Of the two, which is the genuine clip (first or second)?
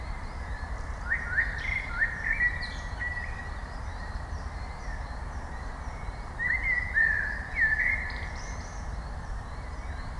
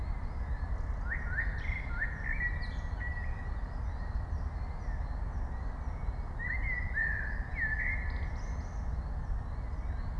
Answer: second